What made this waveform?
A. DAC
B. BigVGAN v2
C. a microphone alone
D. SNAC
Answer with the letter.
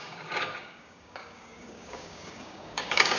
A